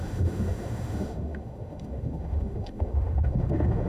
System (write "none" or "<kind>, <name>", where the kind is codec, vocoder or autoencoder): autoencoder, DAC-VAE